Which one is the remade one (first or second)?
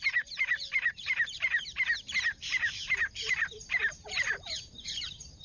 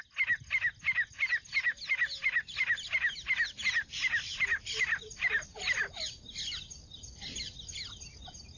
first